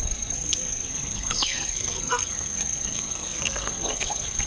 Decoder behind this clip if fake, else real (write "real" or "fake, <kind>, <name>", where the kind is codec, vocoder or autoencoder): fake, codec, SNAC